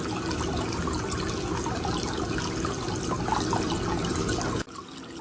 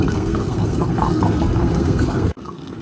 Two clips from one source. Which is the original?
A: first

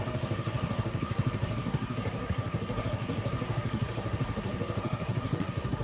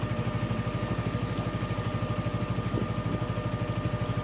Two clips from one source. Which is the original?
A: second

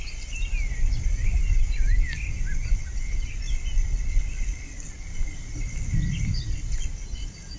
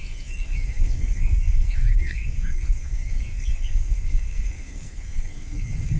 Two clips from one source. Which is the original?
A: first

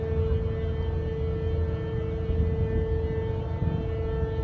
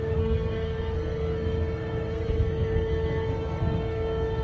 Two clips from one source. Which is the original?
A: first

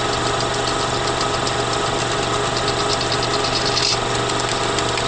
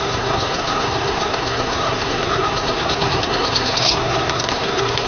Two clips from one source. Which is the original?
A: first